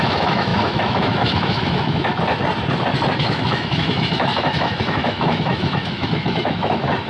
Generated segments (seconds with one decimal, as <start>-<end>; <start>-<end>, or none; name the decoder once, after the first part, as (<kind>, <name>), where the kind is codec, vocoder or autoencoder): 0.0-2.1 (autoencoder, DAC-VAE); 3.2-7.1